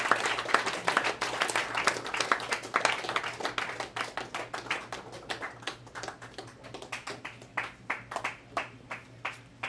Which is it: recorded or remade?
recorded